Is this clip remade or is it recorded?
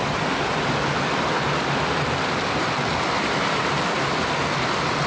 recorded